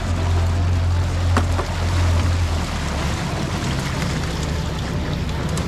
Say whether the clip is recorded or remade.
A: recorded